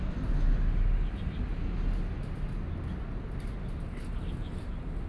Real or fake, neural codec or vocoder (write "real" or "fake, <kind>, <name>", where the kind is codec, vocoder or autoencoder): real